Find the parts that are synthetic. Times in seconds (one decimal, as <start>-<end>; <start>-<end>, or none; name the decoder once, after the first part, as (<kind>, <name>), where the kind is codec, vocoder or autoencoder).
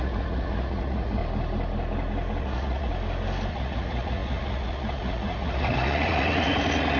0.0-1.2 (vocoder, Vocos); 2.4-2.9; 3.5-7.0